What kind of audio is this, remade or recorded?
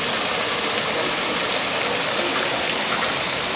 recorded